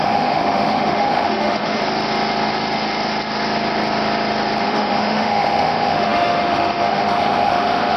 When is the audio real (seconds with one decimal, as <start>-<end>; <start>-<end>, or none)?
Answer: 1.8-4.6